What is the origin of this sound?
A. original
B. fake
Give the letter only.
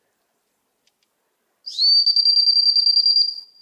A